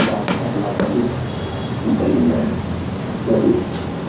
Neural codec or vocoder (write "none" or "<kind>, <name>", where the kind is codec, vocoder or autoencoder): none